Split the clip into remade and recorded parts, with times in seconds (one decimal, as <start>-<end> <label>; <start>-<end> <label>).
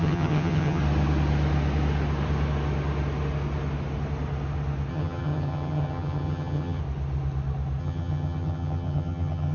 0.0-0.8 remade; 0.8-4.9 recorded; 4.9-6.8 remade; 6.8-7.8 recorded; 7.8-9.5 remade